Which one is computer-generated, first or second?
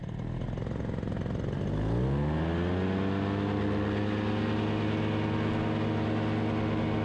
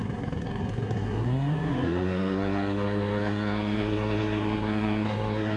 second